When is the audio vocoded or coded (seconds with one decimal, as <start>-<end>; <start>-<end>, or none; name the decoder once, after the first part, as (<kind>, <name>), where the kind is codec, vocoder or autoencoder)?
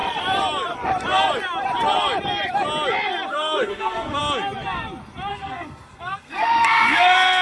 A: 3.3-4.2 (codec, SNAC); 5.3-7.4